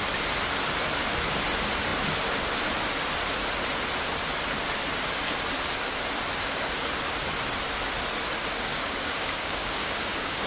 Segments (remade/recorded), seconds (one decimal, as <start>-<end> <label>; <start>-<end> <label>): 0.0-8.7 recorded; 8.7-10.5 remade